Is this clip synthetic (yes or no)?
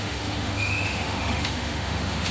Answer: yes